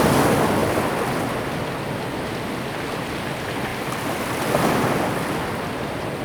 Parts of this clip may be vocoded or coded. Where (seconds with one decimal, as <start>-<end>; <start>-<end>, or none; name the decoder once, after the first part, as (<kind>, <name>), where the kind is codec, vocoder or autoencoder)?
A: 0.6-1.5 (vocoder, BigVGAN v2)